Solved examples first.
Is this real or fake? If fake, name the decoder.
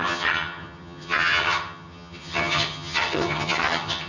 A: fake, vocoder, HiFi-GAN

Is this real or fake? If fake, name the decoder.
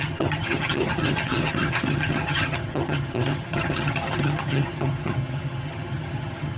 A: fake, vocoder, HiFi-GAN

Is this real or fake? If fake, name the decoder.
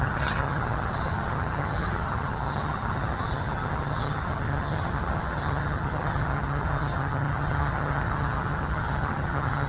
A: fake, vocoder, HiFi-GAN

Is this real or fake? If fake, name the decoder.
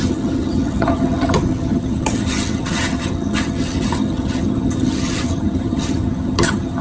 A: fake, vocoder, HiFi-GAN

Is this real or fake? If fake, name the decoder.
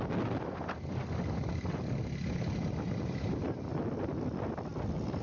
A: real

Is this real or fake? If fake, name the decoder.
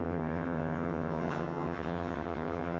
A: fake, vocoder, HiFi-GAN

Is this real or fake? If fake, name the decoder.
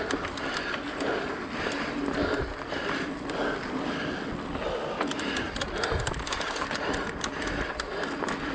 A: real